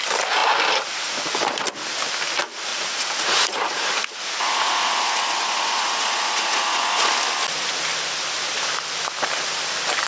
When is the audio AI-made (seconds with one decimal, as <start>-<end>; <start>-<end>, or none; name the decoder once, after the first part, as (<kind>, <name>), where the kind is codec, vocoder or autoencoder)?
2.7-7.1 (vocoder, Vocos)